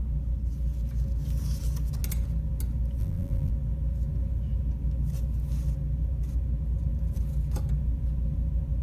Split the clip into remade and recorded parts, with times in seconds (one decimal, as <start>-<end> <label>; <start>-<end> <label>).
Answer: 0.0-3.0 recorded; 3.0-3.5 remade; 3.5-8.8 recorded

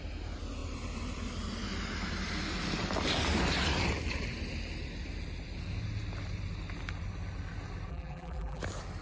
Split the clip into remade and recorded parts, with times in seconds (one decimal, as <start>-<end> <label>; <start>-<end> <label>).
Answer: 0.0-7.9 recorded; 7.9-8.6 remade; 8.6-9.0 recorded

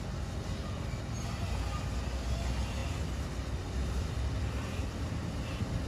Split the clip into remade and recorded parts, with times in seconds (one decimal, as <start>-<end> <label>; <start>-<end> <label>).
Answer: 0.0-2.8 recorded; 2.8-5.1 remade; 5.1-5.9 recorded